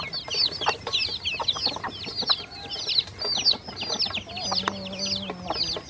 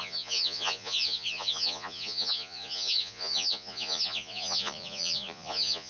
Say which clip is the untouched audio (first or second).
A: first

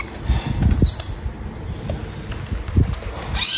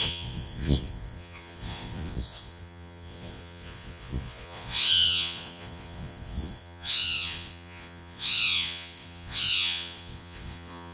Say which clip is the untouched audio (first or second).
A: first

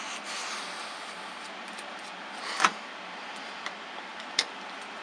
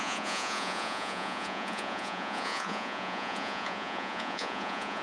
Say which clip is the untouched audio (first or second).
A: first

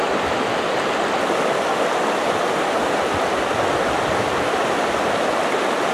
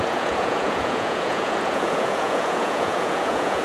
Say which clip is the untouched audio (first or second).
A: first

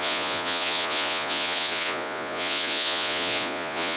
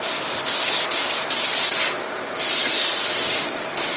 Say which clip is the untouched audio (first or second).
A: second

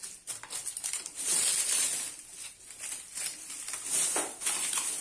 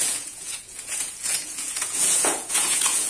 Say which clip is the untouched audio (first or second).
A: first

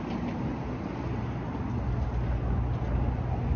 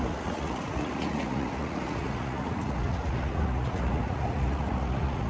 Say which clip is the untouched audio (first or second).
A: first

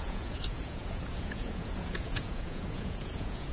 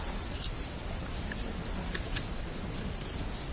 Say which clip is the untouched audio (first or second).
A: second